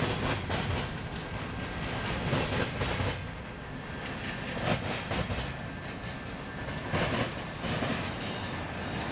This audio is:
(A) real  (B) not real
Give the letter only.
A